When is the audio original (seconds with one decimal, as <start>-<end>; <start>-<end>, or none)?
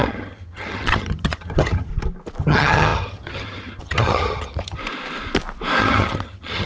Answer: 1.9-2.4; 4.8-5.8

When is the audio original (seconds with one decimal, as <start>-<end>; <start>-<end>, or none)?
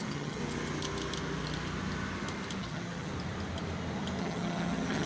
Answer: 0.4-2.6; 3.1-4.2